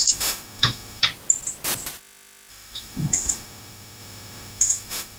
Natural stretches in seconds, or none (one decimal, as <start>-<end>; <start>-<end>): 1.0-2.5